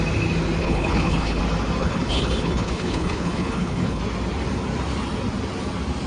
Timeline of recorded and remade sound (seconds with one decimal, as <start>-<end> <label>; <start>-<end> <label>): 0.0-0.6 recorded; 0.6-1.4 remade; 1.4-1.8 recorded; 1.8-4.0 remade; 4.0-6.1 recorded